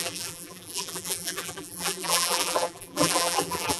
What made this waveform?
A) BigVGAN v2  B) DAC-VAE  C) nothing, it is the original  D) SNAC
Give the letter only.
A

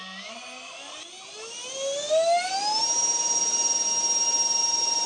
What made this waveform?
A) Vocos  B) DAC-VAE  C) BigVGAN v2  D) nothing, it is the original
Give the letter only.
D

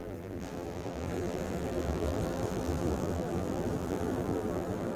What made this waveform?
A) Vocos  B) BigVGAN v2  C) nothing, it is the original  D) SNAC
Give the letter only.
B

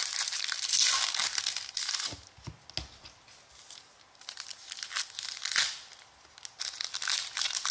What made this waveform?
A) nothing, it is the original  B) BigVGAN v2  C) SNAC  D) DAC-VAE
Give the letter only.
A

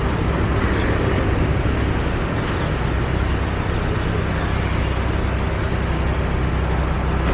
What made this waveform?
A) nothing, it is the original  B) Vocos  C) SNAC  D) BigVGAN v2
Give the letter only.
A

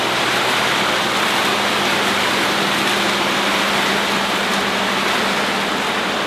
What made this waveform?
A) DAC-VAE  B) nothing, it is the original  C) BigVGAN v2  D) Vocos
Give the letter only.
B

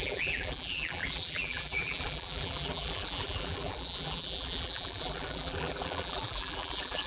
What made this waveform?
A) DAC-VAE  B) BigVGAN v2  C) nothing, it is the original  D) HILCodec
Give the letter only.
B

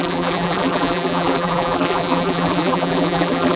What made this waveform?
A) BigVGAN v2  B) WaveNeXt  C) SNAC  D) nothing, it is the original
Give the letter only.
A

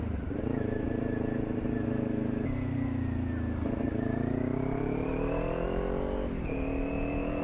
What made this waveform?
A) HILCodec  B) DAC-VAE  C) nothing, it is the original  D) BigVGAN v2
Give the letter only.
C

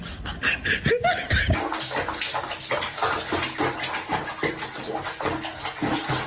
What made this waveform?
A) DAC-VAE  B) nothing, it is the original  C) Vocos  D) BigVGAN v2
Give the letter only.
B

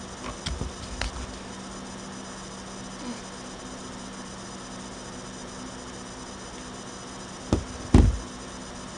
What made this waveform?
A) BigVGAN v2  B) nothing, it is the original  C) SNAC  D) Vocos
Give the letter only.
B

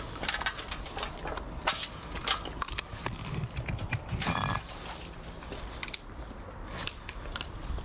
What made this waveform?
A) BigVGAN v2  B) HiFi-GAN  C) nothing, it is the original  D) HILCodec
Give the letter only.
C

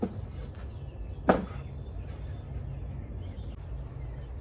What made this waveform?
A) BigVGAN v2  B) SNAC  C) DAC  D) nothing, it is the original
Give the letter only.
D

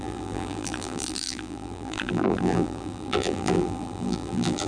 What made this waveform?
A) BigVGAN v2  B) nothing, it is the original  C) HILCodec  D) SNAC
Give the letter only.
A